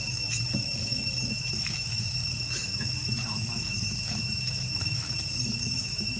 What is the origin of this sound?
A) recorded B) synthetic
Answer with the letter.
B